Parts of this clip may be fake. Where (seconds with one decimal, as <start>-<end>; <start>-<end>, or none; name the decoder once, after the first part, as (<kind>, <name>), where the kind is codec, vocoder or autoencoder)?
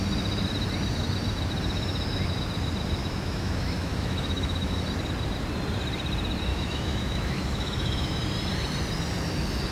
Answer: 3.0-4.8 (autoencoder, DAC-VAE); 6.5-8.2